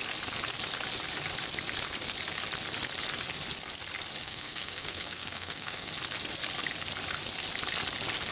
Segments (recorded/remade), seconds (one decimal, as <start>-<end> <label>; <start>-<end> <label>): 0.0-4.2 recorded; 4.2-5.9 remade; 5.9-8.3 recorded